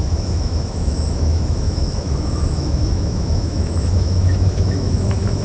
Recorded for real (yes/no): no